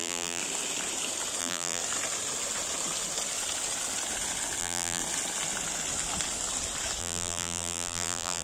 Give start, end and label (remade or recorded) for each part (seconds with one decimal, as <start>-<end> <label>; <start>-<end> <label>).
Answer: 0.0-0.4 remade; 0.4-1.4 recorded; 1.4-1.8 remade; 1.8-4.6 recorded; 4.6-5.0 remade; 5.0-7.0 recorded; 7.0-8.4 remade